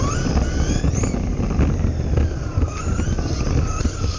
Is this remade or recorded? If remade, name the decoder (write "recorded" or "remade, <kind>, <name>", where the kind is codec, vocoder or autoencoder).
recorded